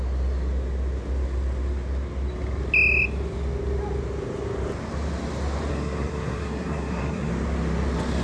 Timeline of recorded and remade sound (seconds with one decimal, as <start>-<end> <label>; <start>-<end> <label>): 0.0-5.7 recorded; 5.7-7.3 remade; 7.3-8.2 recorded